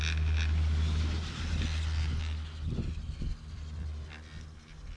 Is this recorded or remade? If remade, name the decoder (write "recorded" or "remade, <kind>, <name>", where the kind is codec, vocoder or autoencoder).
recorded